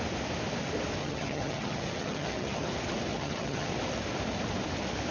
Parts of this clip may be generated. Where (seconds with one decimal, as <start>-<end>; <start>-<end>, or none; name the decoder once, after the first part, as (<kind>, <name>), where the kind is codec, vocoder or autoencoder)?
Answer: 1.0-2.7 (vocoder, HiFi-GAN); 3.1-3.7